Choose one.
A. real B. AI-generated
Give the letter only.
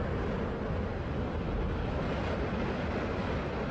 A